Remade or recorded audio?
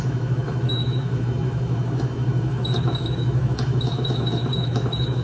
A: remade